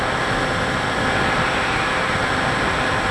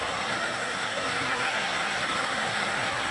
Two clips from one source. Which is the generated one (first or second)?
second